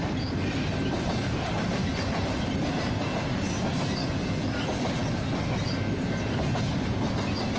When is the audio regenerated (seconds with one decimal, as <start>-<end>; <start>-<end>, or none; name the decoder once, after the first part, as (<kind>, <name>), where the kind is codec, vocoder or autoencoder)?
none